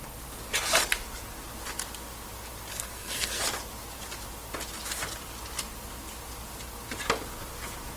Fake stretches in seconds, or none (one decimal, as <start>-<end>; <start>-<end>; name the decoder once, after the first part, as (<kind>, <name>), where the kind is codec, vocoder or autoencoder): 2.7-3.4 (codec, SNAC)